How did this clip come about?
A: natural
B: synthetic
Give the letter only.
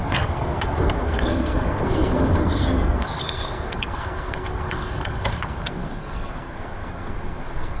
B